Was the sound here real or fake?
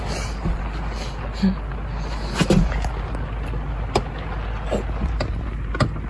real